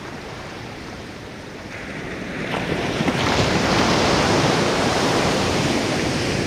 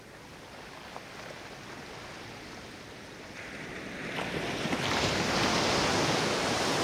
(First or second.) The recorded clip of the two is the second